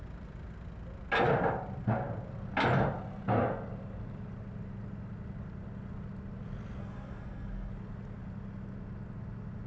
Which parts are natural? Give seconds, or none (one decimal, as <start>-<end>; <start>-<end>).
0.0-6.8; 7.7-9.7